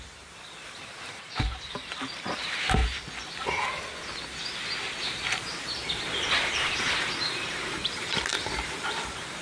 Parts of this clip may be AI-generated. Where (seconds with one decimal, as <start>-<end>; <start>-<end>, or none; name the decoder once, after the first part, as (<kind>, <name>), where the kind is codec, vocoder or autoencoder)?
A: 0.0-2.8 (vocoder, BigVGAN v2); 5.0-5.8; 6.5-9.4